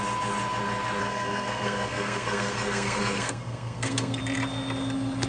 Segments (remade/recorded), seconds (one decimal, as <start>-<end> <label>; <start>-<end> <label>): 0.0-1.0 recorded; 1.0-4.2 remade; 4.2-5.3 recorded

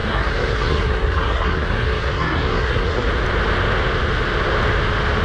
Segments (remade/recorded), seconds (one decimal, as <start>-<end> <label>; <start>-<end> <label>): 0.0-3.1 remade; 3.1-5.2 recorded

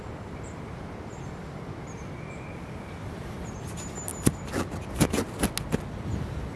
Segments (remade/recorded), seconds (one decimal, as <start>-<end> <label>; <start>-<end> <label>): 0.0-6.6 recorded

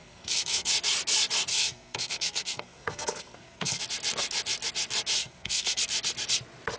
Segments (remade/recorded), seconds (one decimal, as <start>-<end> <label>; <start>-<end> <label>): 0.0-0.7 remade; 0.7-1.5 recorded; 1.5-3.8 remade; 3.8-5.2 recorded; 5.2-5.8 remade; 5.8-6.8 recorded

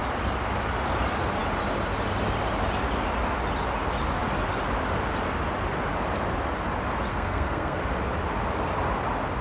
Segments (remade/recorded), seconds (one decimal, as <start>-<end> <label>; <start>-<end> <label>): 0.0-7.1 recorded; 7.1-7.8 remade; 7.8-9.4 recorded

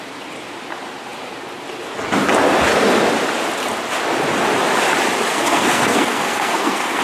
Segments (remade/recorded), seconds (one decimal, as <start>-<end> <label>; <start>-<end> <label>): 0.0-5.3 recorded; 5.3-7.0 remade